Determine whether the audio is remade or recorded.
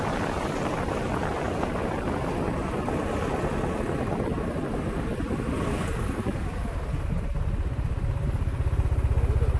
recorded